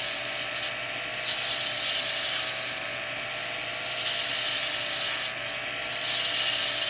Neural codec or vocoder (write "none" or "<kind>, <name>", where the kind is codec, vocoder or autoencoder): none